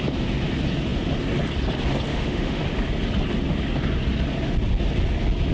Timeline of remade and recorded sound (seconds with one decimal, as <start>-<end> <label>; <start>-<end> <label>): 0.0-2.1 recorded; 2.1-2.6 remade; 2.6-5.5 recorded